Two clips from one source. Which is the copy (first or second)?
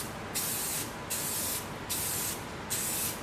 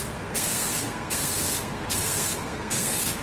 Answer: second